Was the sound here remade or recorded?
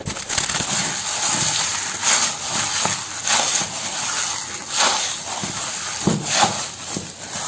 recorded